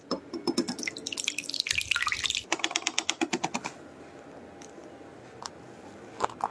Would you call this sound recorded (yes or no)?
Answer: yes